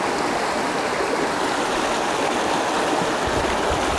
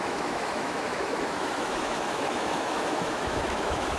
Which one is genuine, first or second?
first